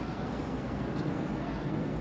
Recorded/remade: remade